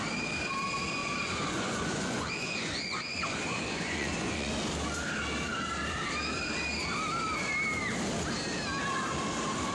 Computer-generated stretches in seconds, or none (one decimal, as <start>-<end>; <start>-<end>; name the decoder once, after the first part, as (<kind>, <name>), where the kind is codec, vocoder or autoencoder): 1.0-4.5 (vocoder, Vocos)

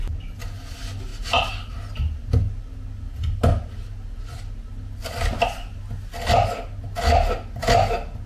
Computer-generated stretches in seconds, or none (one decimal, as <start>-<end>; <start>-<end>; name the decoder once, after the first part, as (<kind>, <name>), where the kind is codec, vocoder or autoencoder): none